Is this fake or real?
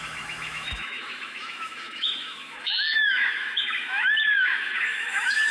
fake